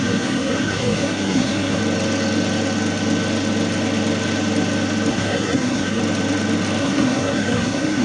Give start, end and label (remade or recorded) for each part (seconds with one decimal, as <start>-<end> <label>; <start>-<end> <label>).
0.0-1.8 remade; 1.8-5.1 recorded; 5.1-6.0 remade; 6.0-6.8 recorded; 6.8-8.0 remade